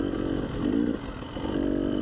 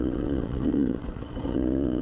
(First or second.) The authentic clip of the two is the first